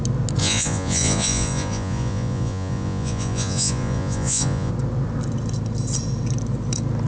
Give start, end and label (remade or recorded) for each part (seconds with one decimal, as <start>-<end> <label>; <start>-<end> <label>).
0.0-0.4 recorded; 0.4-4.7 remade; 4.7-7.1 recorded